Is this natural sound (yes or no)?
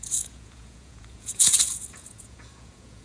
no